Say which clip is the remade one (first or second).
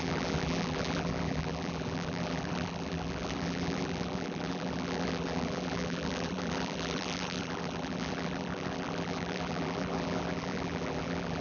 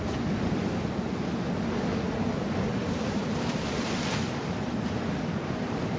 first